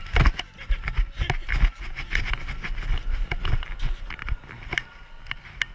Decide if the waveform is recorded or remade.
recorded